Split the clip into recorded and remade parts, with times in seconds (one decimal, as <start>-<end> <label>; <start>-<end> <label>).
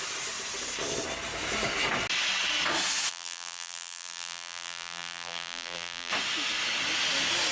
0.0-3.1 recorded; 3.1-6.1 remade; 6.1-7.5 recorded